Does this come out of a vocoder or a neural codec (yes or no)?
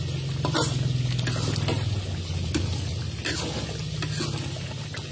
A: no